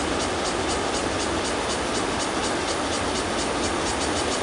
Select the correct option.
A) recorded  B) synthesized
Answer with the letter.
A